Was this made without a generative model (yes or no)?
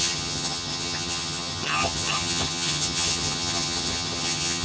no